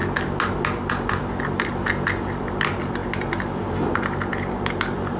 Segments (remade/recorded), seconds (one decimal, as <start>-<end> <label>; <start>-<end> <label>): 0.0-5.2 recorded